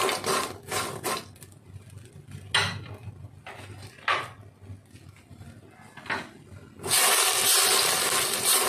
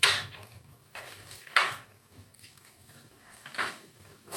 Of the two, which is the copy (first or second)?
second